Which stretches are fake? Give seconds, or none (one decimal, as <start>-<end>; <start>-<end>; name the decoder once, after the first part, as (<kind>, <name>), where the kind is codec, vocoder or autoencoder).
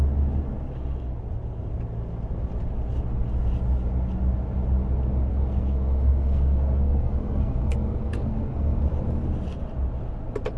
5.3-8.8 (codec, SNAC)